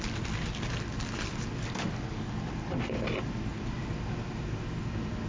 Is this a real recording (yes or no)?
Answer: yes